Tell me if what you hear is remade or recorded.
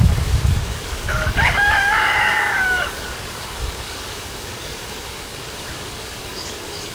remade